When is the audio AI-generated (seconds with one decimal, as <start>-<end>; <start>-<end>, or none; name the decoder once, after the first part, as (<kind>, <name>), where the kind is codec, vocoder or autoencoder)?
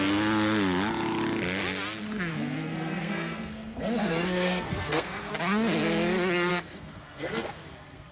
2.3-5.3 (codec, SNAC); 6.5-8.1